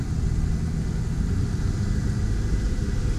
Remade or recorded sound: recorded